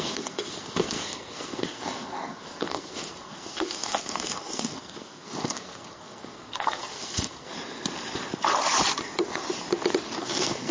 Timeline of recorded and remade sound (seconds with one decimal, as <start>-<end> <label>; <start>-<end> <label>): 0.0-7.5 remade; 7.5-10.2 recorded; 10.2-10.7 remade